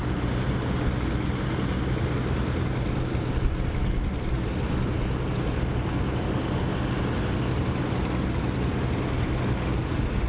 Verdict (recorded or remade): recorded